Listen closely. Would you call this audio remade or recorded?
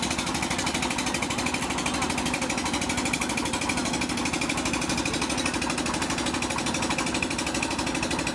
recorded